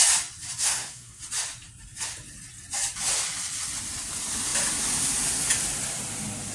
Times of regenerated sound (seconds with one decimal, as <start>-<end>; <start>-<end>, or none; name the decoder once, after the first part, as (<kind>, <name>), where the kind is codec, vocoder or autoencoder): 0.6-1.2 (codec, SNAC)